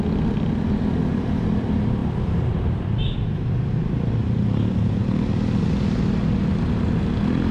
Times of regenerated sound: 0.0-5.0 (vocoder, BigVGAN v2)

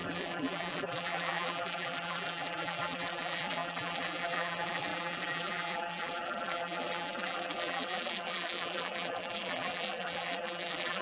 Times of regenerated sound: 0.0-11.0 (vocoder, BigVGAN v2)

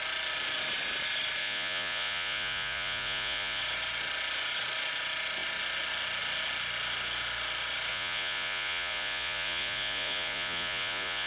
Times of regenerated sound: 1.4-3.6 (vocoder, Vocos); 7.9-11.3

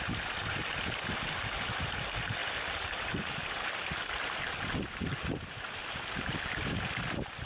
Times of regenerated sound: 2.4-3.6 (vocoder, BigVGAN v2); 5.8-6.3